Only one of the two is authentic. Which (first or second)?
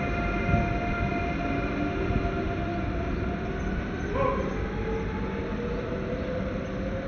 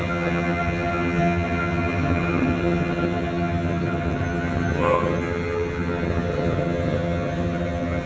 first